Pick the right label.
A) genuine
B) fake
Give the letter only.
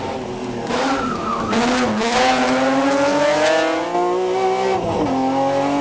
A